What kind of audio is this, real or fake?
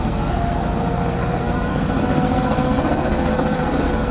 fake